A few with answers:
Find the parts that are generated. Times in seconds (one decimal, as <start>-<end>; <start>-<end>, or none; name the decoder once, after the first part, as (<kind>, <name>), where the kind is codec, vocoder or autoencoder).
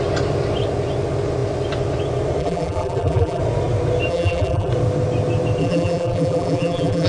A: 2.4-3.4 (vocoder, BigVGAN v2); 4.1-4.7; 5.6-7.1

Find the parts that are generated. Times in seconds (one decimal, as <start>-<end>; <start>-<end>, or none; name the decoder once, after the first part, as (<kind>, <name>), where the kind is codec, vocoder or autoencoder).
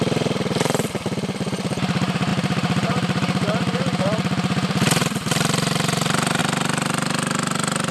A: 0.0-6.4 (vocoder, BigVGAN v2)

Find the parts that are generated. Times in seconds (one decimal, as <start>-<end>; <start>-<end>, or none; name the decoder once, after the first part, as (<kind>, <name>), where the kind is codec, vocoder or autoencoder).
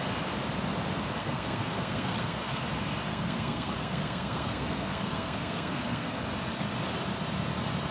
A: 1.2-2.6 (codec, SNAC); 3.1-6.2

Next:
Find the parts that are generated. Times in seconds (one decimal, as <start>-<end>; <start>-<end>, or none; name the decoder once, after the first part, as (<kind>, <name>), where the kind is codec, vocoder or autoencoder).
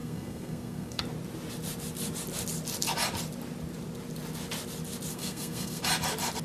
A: 0.0-1.0 (codec, SNAC); 5.1-5.8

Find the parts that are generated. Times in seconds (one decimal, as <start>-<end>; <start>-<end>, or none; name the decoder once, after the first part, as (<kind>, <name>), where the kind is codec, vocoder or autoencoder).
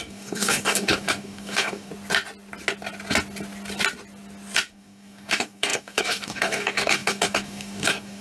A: 0.0-1.9 (codec, DAC); 4.7-8.2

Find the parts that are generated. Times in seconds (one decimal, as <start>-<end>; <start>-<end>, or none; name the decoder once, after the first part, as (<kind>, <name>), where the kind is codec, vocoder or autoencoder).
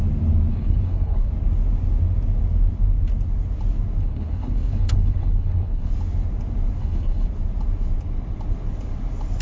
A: 0.5-1.3 (codec, HILCodec); 4.0-5.9; 6.8-7.3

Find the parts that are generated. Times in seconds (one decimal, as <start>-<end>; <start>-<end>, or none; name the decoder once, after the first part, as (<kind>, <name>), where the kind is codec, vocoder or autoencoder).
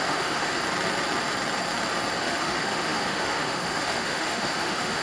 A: 0.0-0.6 (autoencoder, DAC-VAE); 2.2-5.0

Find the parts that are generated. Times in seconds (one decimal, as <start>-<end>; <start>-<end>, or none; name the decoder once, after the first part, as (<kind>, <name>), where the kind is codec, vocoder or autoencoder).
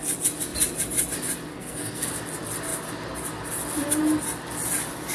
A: 1.5-2.1 (codec, SNAC)